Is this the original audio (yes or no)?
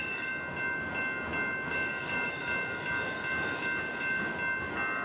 yes